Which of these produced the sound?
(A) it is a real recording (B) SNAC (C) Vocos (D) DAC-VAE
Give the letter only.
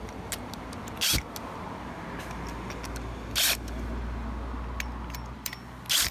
A